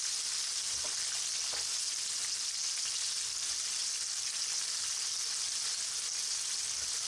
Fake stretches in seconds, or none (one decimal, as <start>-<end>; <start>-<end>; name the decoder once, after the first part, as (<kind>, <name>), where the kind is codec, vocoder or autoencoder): none